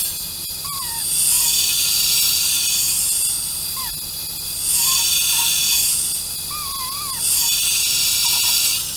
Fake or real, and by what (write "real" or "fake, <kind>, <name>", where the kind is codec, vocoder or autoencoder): real